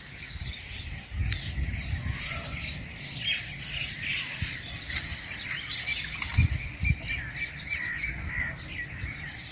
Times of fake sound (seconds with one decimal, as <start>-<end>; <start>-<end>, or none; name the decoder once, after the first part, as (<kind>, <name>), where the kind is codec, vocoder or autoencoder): 0.0-0.8 (vocoder, BigVGAN v2); 5.9-6.9